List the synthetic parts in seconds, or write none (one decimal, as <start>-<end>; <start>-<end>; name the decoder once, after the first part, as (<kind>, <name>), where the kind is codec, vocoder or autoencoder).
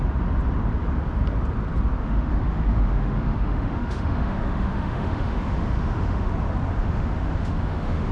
2.0-6.3 (autoencoder, DAC-VAE); 6.8-8.1